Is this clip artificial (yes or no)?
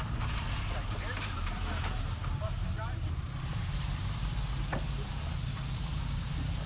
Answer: yes